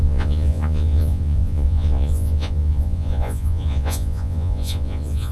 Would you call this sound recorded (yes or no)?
no